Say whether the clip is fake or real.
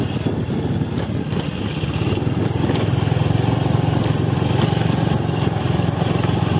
real